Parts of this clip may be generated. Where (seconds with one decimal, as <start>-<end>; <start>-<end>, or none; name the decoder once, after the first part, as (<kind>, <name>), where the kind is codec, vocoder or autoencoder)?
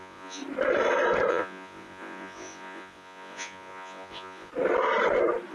0.0-0.4 (vocoder, Vocos); 1.3-4.5